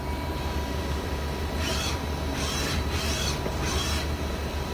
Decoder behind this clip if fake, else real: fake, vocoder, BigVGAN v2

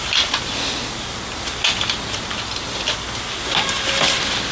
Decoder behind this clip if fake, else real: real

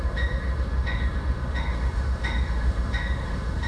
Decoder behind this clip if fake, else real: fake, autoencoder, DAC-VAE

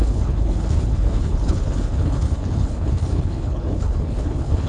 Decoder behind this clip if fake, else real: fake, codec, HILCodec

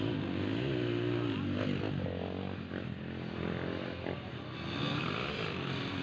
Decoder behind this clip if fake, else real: real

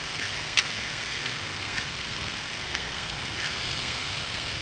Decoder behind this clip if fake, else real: fake, codec, SNAC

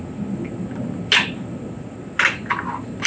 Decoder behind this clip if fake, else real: real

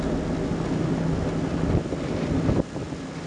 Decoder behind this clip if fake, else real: real